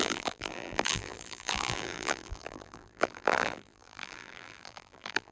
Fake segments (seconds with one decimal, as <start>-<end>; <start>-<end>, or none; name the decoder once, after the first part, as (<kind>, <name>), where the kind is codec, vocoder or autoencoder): 0.0-5.3 (vocoder, BigVGAN v2)